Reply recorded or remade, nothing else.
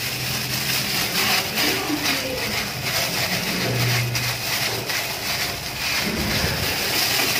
recorded